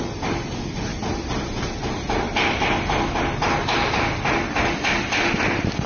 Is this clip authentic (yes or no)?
yes